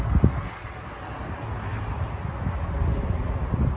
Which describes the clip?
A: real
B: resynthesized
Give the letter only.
A